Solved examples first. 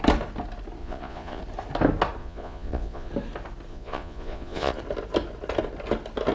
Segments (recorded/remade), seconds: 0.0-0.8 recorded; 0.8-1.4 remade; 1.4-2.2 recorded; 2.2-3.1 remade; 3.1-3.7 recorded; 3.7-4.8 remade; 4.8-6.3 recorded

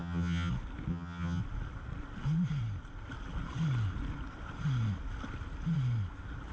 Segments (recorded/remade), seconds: 0.0-0.5 remade; 0.5-0.9 recorded; 0.9-1.4 remade; 1.4-6.5 recorded